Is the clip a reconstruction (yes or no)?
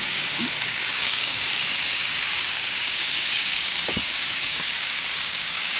yes